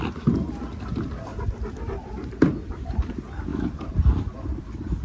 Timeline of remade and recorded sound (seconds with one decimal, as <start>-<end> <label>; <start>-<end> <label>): 0.0-1.3 recorded; 1.3-3.1 remade; 3.1-3.5 recorded; 3.5-4.6 remade; 4.6-5.0 recorded